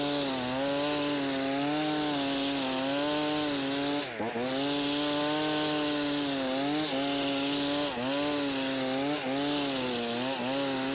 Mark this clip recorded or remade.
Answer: recorded